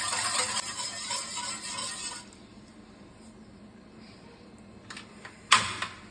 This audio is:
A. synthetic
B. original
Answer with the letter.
B